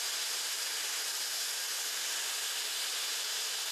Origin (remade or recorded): recorded